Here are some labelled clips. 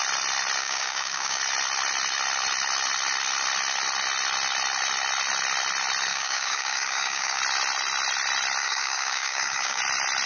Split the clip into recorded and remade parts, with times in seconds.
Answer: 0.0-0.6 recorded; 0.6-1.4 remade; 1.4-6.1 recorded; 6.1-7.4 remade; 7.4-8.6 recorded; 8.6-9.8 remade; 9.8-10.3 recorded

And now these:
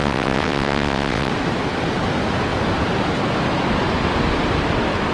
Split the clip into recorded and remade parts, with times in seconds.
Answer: 0.0-1.3 remade; 1.3-5.1 recorded

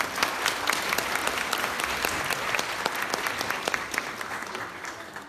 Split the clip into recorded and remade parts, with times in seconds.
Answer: 0.0-5.3 recorded

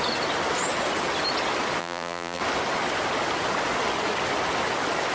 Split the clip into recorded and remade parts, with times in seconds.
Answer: 0.0-1.8 recorded; 1.8-2.4 remade; 2.4-5.1 recorded

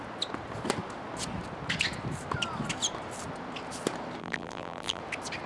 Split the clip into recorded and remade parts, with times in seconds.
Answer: 0.0-4.2 recorded; 4.2-5.0 remade; 5.0-5.5 recorded

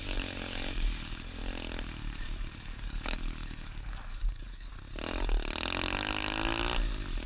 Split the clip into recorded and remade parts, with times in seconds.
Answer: 0.0-1.4 remade; 1.4-2.5 recorded; 2.5-4.7 remade; 4.7-7.3 recorded